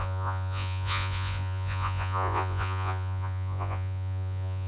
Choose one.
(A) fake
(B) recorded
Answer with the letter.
A